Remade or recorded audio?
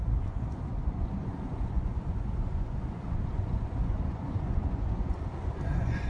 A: remade